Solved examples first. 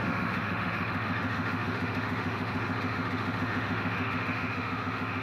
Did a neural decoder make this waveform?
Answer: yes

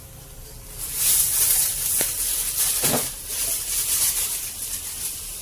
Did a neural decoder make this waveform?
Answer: no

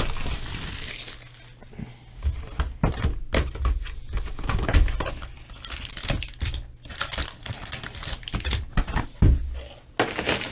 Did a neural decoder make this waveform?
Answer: no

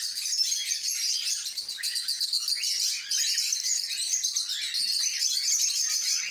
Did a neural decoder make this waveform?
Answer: no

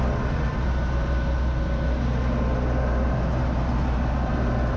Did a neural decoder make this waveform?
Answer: no